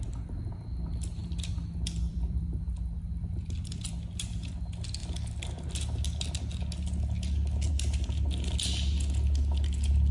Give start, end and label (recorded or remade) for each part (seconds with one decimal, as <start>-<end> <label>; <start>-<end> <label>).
0.0-1.2 recorded; 1.2-3.8 remade; 3.8-10.1 recorded